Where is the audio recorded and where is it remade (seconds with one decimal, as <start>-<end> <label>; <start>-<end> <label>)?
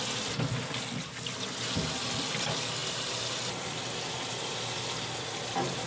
0.0-5.9 recorded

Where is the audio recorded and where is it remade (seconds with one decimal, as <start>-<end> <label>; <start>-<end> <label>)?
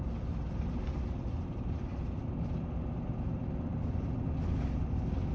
0.0-5.3 recorded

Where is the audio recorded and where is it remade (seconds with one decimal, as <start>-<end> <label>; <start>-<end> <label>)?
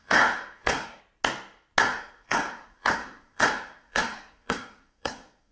0.0-1.0 remade; 1.0-1.8 recorded; 1.8-5.5 remade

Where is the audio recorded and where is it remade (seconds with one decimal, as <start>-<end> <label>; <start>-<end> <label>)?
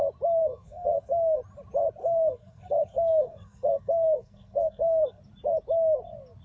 0.0-0.4 recorded; 0.4-1.4 remade; 1.4-2.0 recorded; 2.0-5.2 remade; 5.2-6.4 recorded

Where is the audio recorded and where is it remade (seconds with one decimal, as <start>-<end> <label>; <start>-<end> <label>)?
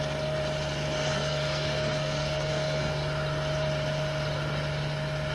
0.0-1.1 recorded; 1.1-2.9 remade; 2.9-5.3 recorded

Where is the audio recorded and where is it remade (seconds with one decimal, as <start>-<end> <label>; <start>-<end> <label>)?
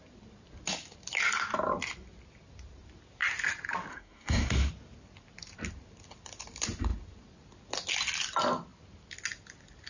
0.0-3.9 recorded; 3.9-4.7 remade; 4.7-9.9 recorded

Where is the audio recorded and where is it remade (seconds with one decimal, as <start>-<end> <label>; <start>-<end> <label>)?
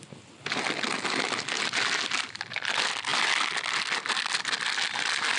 0.0-5.4 recorded